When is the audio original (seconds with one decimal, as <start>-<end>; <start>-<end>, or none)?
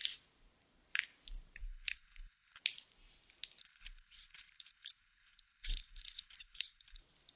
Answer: 0.0-1.6; 2.6-3.6; 7.0-7.4